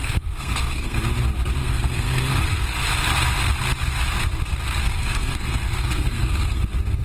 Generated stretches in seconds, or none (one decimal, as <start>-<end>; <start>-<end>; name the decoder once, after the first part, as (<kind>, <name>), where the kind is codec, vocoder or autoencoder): 0.0-1.0 (codec, SNAC); 1.6-2.8; 4.8-6.6